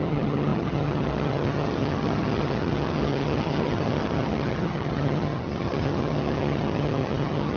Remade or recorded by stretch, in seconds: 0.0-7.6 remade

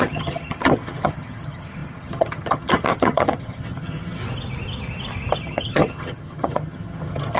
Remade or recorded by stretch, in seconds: 0.0-4.2 remade; 4.2-5.4 recorded; 5.4-7.4 remade

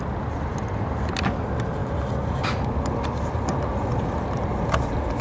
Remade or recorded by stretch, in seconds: 0.0-5.2 recorded

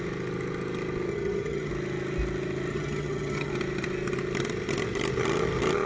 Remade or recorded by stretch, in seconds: 0.0-1.1 recorded; 1.1-1.7 remade; 1.7-2.7 recorded; 2.7-3.5 remade; 3.5-5.9 recorded

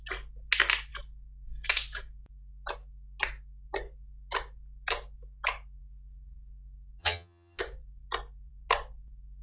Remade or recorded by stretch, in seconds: 0.0-7.0 recorded; 7.0-7.6 remade; 7.6-9.4 recorded